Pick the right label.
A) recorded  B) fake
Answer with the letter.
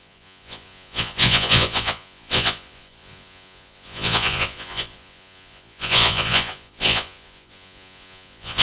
B